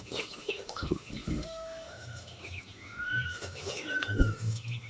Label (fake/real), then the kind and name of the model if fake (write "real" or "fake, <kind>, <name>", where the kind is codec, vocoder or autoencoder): fake, autoencoder, DAC-VAE